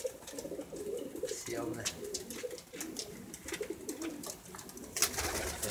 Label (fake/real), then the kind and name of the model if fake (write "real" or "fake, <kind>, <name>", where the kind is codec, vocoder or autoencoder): real